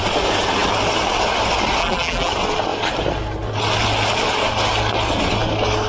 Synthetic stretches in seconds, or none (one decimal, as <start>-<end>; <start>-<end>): 1.8-2.3

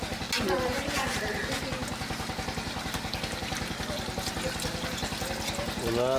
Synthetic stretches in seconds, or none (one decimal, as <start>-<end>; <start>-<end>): 0.7-1.4

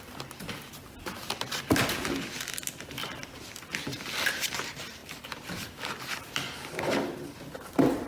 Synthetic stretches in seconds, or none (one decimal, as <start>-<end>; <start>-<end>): 0.0-8.1

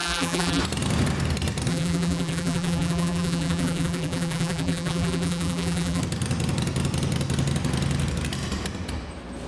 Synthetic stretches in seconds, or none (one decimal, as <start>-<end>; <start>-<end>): 0.0-0.6; 1.7-6.0

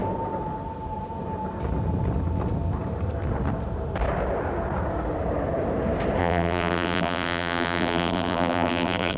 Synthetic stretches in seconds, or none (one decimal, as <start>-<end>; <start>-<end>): 6.2-9.2

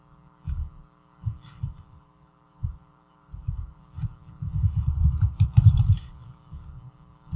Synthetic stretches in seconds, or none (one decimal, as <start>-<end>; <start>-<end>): 1.7-3.8; 5.0-6.0

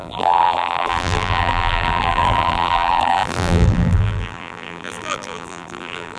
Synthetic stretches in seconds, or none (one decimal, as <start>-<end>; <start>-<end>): 0.0-6.2

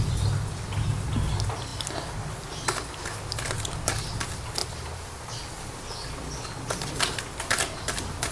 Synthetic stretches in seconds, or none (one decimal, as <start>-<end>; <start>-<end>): 4.6-5.3